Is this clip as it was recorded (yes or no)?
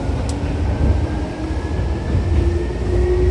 yes